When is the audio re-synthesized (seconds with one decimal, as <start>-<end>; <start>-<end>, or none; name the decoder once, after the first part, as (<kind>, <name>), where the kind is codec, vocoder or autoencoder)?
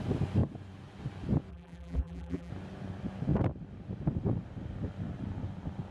1.5-2.5 (vocoder, BigVGAN v2)